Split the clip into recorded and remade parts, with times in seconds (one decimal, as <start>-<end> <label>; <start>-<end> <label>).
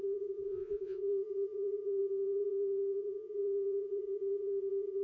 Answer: 0.0-5.0 remade